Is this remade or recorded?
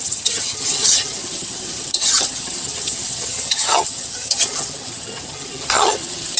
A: remade